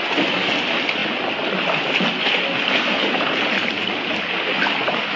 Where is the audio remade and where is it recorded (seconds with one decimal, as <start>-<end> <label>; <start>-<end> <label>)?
0.0-5.2 recorded

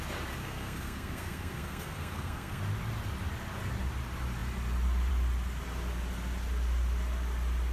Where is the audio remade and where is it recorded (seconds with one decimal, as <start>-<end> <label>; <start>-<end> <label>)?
0.0-0.4 recorded; 0.4-2.6 remade; 2.6-7.7 recorded

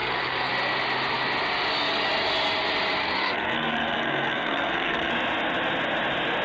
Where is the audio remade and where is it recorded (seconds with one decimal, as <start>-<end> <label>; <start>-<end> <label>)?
0.0-0.5 remade; 0.5-3.0 recorded; 3.0-5.1 remade; 5.1-6.4 recorded

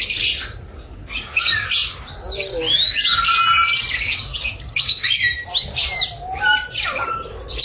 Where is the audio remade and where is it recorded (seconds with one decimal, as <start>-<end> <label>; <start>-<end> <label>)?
0.0-7.6 recorded